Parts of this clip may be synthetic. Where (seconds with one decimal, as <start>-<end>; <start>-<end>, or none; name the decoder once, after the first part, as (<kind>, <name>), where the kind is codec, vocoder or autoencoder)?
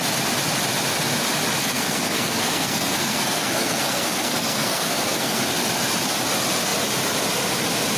1.6-5.4 (codec, SNAC)